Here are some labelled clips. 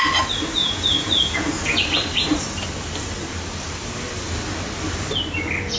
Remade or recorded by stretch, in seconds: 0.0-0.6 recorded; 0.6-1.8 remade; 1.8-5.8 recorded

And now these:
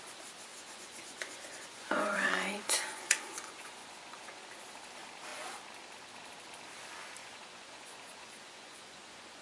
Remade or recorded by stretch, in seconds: 0.0-0.5 recorded; 0.5-4.5 remade; 4.5-7.2 recorded; 7.2-9.4 remade

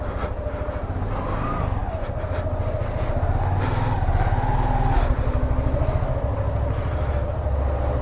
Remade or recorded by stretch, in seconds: 0.0-8.0 recorded

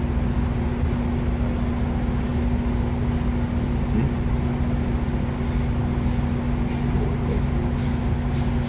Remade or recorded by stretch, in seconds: 0.0-8.7 recorded

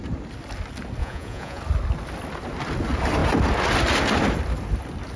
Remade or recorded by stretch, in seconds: 0.0-1.0 recorded; 1.0-1.6 remade; 1.6-5.2 recorded

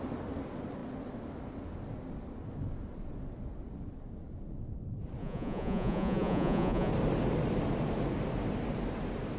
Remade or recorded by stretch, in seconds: 0.0-5.2 recorded; 5.2-6.9 remade; 6.9-9.4 recorded